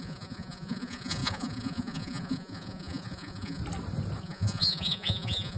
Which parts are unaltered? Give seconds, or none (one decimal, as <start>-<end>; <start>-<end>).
3.6-4.2